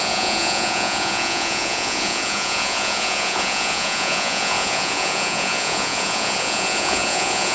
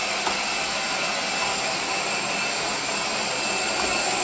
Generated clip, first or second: first